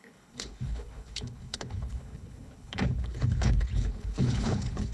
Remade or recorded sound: remade